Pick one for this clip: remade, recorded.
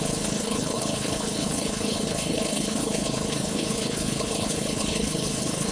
remade